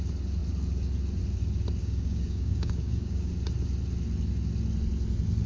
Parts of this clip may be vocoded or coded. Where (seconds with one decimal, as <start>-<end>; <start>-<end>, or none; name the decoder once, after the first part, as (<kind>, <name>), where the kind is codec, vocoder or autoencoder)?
1.8-3.3 (codec, DAC)

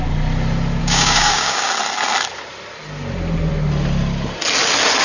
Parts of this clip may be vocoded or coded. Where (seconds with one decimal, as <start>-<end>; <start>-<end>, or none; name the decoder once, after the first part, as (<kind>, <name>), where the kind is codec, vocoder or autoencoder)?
0.8-1.7 (codec, DAC)